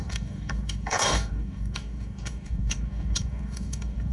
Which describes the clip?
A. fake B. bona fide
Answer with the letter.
A